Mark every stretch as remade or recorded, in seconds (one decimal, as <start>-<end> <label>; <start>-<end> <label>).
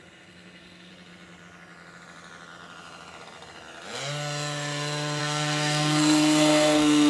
0.0-0.9 remade; 0.9-5.2 recorded; 5.2-7.1 remade